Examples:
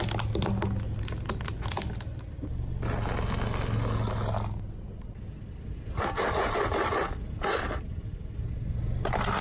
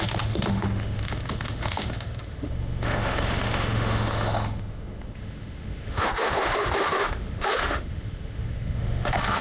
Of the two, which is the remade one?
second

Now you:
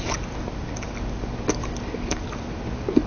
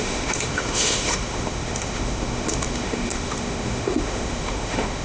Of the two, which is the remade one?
second